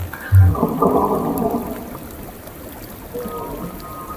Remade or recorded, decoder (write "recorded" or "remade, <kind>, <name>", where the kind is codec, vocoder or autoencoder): recorded